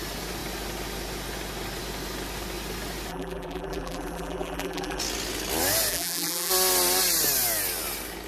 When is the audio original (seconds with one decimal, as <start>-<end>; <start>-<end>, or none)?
0.0-3.1; 5.0-5.9; 6.5-8.3